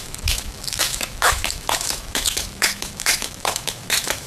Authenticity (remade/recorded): remade